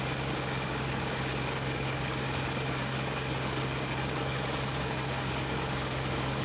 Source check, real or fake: fake